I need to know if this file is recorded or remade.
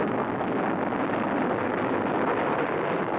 recorded